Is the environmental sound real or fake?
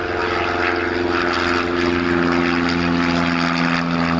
real